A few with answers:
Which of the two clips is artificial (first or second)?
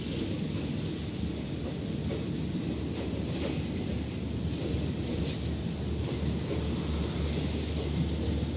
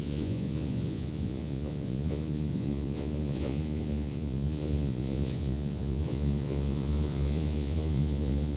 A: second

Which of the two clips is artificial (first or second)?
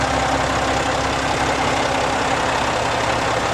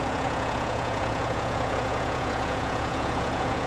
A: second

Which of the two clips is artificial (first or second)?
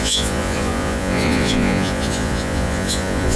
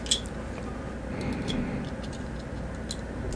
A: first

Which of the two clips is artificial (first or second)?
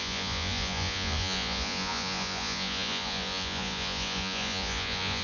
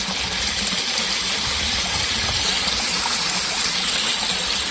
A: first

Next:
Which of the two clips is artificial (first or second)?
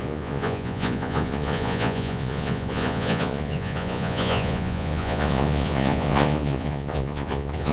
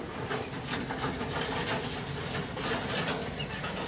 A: first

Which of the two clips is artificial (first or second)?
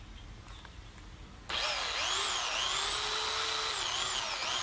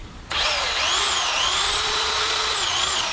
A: second